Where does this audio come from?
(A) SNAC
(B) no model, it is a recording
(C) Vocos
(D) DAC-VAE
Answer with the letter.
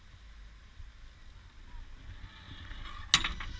B